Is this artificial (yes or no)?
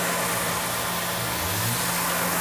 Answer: no